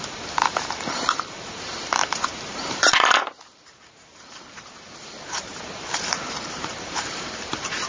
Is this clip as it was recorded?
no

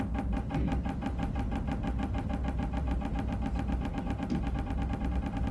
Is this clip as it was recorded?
yes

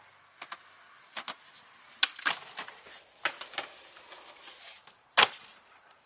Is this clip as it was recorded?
yes